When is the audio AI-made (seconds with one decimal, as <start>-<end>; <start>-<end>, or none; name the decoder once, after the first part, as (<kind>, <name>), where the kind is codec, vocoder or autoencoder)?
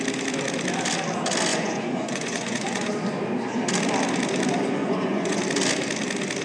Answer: 1.5-2.9 (vocoder, Vocos); 4.8-5.4